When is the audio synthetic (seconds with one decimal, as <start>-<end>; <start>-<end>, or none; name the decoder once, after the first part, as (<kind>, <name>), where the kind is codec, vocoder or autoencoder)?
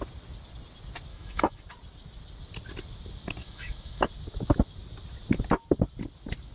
1.1-1.6 (autoencoder, DAC-VAE); 3.4-4.1